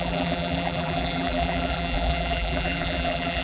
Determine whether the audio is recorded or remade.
remade